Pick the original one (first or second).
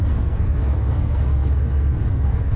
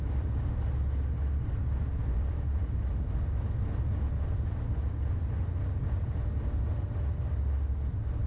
second